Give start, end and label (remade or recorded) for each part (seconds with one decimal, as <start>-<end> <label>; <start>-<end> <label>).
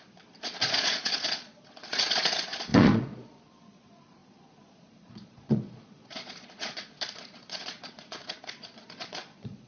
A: 0.0-9.7 remade